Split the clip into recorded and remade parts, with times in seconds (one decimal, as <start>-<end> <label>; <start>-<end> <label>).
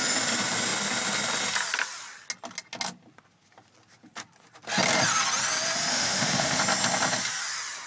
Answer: 0.0-5.9 recorded; 5.9-6.6 remade; 6.6-7.9 recorded